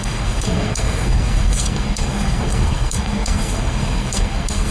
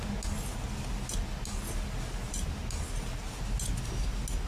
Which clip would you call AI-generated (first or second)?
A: first